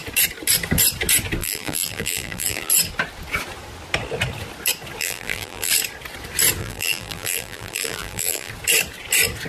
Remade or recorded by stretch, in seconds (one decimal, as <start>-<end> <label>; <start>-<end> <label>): 0.0-1.4 recorded; 1.4-2.7 remade; 2.7-5.0 recorded; 5.0-5.7 remade; 5.7-6.6 recorded; 6.6-8.5 remade; 8.5-9.5 recorded